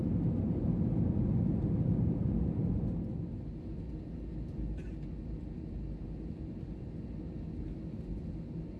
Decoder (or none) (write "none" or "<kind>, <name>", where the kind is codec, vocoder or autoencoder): none